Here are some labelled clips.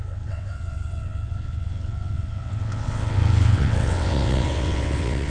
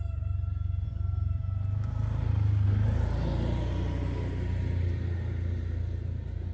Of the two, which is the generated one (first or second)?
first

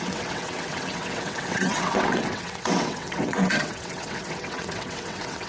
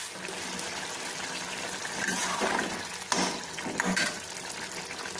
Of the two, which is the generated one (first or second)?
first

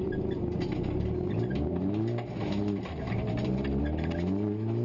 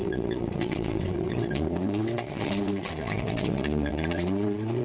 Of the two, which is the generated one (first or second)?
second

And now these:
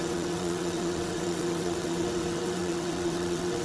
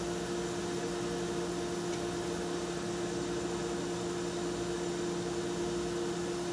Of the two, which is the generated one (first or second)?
first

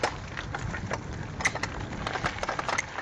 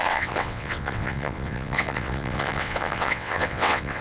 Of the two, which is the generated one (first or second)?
second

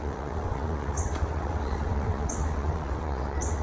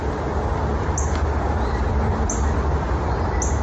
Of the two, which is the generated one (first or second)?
first